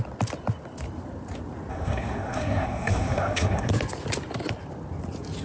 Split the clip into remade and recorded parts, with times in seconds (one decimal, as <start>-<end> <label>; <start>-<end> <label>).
0.0-1.7 recorded; 1.7-3.7 remade; 3.7-5.4 recorded